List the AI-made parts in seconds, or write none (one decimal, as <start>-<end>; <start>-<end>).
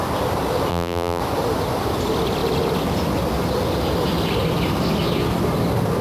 0.7-1.2